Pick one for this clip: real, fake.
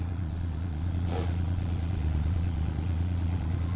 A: fake